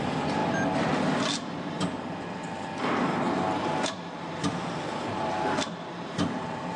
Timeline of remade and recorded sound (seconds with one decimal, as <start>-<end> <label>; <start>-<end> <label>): 0.0-0.4 remade; 0.4-4.5 recorded; 4.5-6.8 remade